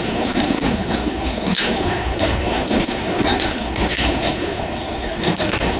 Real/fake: fake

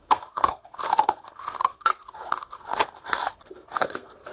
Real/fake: fake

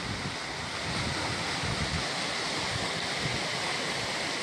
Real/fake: real